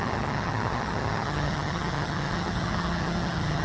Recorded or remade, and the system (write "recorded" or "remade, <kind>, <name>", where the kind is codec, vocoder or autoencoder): remade, vocoder, HiFi-GAN